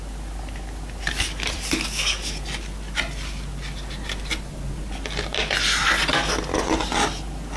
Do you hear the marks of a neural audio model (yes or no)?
no